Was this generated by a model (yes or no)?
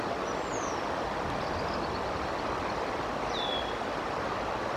no